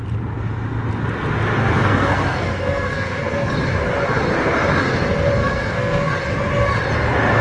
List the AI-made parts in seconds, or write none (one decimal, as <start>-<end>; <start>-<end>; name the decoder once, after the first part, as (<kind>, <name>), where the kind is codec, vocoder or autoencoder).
1.6-3.5 (codec, SNAC); 5.4-6.2